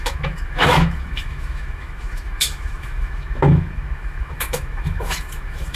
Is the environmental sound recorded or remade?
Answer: remade